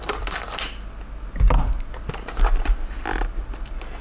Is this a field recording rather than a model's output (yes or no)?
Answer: yes